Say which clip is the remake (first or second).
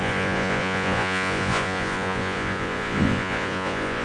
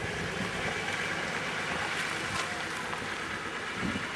first